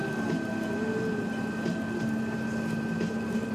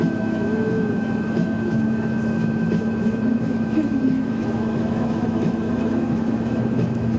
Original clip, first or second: first